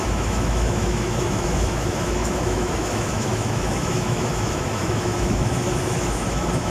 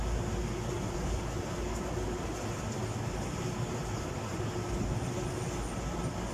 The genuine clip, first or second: second